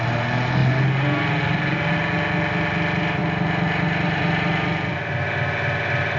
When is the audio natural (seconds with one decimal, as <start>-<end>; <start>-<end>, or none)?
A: 0.0-6.2

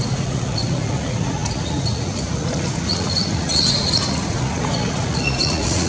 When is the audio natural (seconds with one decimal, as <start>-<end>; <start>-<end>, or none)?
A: none